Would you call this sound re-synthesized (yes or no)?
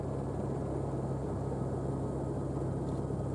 no